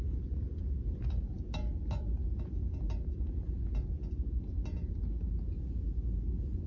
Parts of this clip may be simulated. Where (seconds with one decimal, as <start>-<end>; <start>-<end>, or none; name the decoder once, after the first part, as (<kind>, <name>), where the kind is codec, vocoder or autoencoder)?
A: none

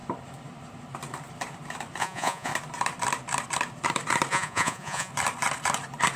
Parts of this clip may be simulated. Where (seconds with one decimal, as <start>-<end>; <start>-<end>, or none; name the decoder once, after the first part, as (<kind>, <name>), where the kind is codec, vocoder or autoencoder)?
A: 2.0-2.5 (vocoder, Vocos); 4.3-5.1

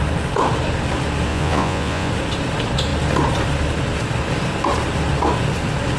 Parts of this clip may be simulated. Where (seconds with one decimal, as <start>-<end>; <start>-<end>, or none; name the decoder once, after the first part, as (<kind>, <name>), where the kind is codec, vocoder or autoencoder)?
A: 1.3-2.1 (vocoder, Vocos)